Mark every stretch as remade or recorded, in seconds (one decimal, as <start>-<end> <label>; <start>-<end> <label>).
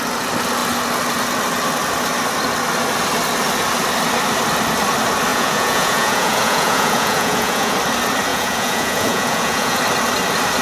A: 0.0-5.3 recorded; 5.3-7.7 remade; 7.7-8.3 recorded; 8.3-9.8 remade; 9.8-10.6 recorded